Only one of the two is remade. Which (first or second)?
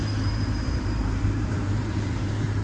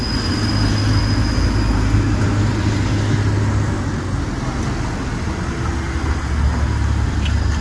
first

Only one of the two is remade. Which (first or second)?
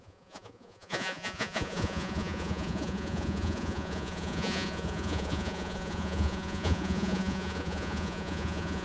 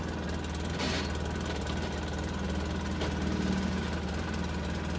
first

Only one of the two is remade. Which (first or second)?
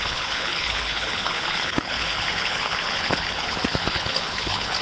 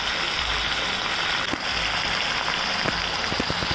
first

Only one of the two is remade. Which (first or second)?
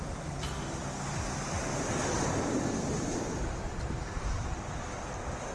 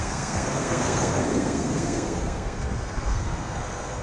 second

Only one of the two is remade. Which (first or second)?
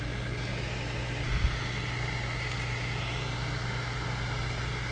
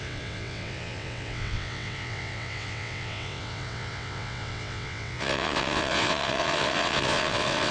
second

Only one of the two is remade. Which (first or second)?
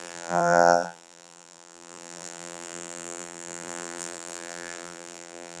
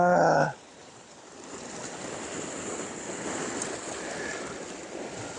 first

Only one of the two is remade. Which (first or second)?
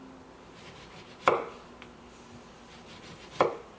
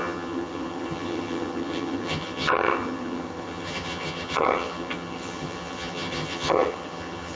second